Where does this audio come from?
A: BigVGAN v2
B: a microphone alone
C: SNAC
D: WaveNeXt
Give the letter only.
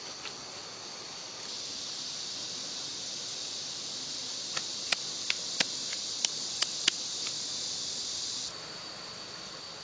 B